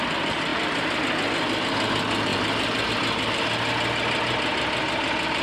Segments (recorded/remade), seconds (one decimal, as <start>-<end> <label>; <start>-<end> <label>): 0.0-0.5 recorded; 0.5-1.0 remade; 1.0-2.3 recorded; 2.3-2.9 remade; 2.9-5.4 recorded